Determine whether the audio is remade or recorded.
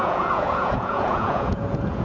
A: remade